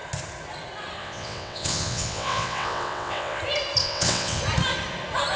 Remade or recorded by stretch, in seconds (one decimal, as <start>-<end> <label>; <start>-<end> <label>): 0.0-1.0 recorded; 1.0-3.4 remade; 3.4-3.8 recorded; 3.8-4.4 remade; 4.4-5.4 recorded

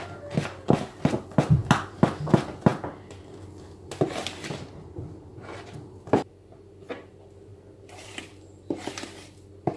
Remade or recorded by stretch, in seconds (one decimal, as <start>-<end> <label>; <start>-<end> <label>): 0.0-7.5 recorded; 7.5-8.2 remade; 8.2-9.8 recorded

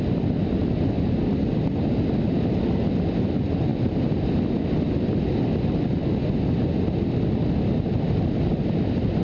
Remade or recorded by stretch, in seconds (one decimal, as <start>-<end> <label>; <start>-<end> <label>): 0.0-9.2 recorded

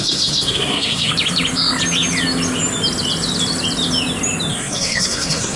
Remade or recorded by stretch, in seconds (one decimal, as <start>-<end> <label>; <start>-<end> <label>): 0.0-1.1 remade; 1.1-4.5 recorded; 4.5-5.6 remade

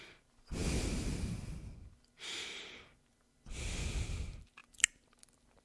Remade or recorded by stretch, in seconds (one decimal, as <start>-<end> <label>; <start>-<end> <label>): 0.0-5.6 recorded

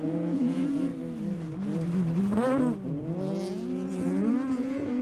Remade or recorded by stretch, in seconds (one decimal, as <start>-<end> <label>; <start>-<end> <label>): 0.0-0.9 remade; 0.9-3.9 recorded; 3.9-5.0 remade